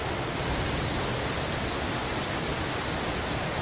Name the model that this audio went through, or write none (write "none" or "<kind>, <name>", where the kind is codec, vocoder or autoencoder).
none